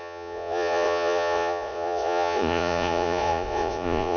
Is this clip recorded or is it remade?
remade